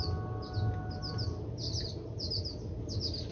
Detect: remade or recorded recorded